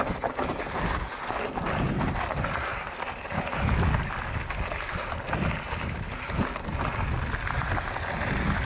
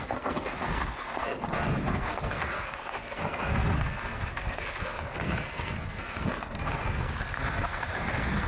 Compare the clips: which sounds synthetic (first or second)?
second